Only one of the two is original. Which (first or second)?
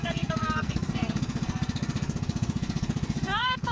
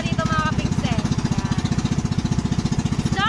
second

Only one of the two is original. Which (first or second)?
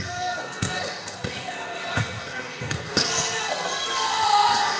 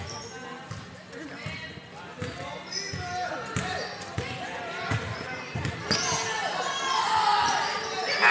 second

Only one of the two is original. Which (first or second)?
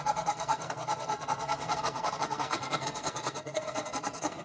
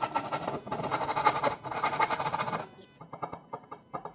second